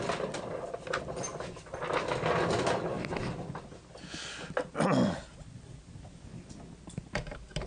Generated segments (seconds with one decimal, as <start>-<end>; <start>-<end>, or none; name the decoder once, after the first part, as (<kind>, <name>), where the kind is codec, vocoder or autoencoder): none